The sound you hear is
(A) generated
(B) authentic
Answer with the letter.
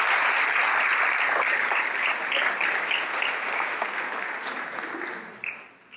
B